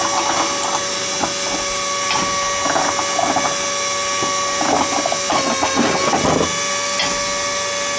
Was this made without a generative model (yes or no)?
yes